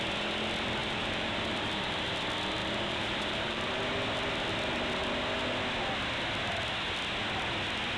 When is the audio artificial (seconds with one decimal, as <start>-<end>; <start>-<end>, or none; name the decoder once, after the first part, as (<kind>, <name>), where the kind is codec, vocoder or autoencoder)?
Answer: 0.8-2.0 (vocoder, BigVGAN v2); 2.6-3.8